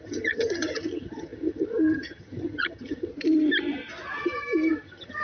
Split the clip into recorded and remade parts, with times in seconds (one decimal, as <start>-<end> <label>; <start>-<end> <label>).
0.0-3.1 remade; 3.1-4.7 recorded; 4.7-5.2 remade